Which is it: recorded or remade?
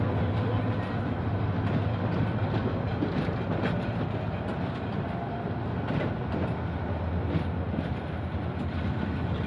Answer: recorded